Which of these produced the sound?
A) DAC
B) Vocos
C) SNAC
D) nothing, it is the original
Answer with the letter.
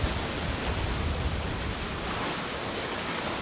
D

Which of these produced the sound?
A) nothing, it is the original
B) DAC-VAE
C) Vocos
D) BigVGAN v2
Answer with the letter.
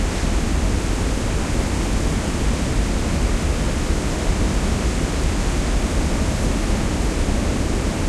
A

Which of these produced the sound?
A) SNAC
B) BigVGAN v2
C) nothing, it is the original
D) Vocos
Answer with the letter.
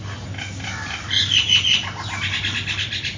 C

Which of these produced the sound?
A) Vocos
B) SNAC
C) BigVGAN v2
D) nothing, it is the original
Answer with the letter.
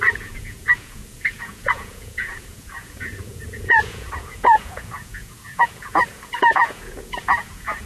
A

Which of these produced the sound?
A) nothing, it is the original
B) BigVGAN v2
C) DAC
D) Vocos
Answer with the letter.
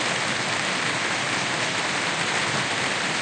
A